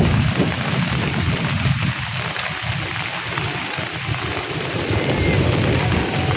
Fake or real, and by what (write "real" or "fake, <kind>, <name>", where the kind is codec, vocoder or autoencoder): fake, vocoder, BigVGAN v2